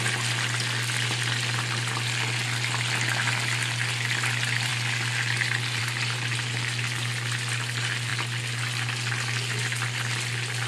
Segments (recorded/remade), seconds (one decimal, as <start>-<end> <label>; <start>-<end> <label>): 0.0-10.7 recorded